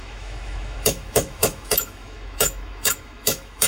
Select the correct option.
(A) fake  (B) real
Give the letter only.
A